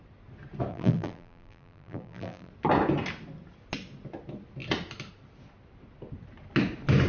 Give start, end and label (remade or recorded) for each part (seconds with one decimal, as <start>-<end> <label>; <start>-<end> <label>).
0.0-0.7 recorded; 0.7-2.5 remade; 2.5-7.1 recorded